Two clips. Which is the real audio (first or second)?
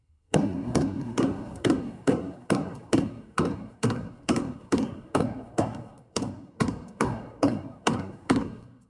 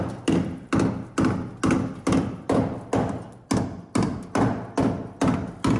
second